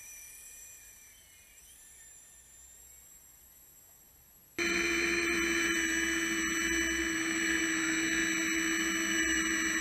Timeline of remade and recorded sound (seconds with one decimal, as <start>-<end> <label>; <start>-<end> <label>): 0.0-7.0 recorded; 7.0-7.6 remade; 7.6-9.8 recorded